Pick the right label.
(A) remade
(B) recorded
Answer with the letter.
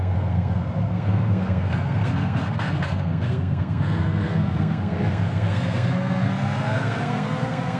A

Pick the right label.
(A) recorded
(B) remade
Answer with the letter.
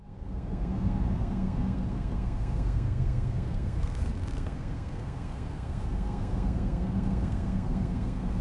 B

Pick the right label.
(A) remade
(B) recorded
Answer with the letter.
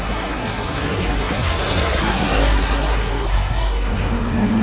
A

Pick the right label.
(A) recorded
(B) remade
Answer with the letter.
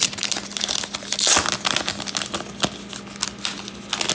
A